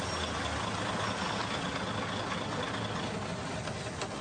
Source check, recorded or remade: recorded